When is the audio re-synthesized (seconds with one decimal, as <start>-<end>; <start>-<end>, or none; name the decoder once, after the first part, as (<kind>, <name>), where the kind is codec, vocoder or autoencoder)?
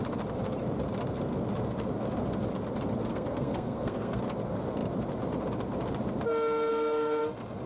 3.1-4.2 (codec, SNAC); 6.7-7.2